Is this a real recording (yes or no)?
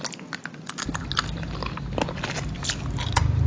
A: yes